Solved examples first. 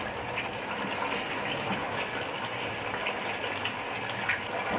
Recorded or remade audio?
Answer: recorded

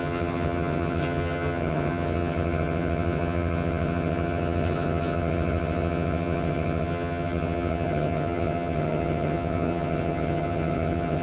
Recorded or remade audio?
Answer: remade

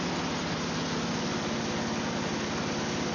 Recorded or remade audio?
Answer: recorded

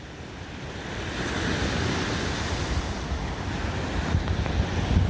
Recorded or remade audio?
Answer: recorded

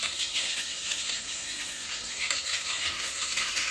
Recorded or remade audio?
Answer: remade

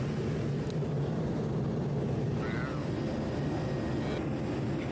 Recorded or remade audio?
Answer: recorded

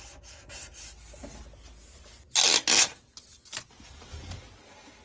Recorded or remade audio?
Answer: recorded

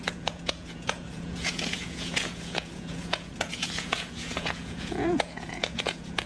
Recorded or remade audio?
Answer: remade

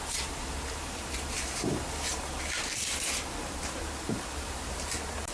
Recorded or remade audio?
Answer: remade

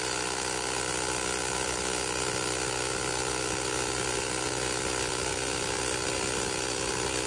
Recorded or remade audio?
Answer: recorded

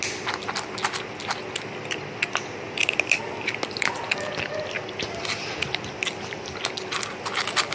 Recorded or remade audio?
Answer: recorded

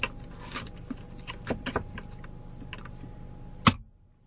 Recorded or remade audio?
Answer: recorded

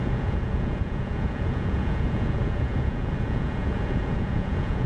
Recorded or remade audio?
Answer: remade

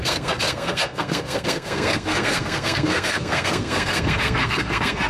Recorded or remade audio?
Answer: remade